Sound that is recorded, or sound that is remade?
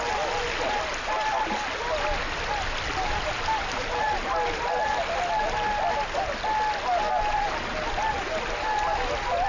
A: recorded